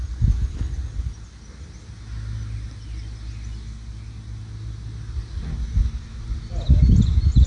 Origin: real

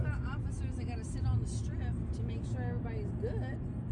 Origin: real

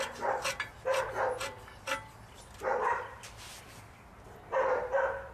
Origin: real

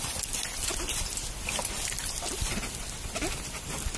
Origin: fake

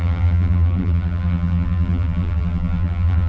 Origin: fake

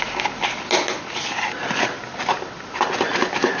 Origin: real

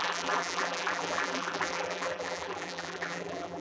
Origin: fake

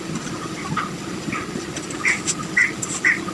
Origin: real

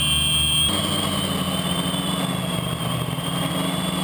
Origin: real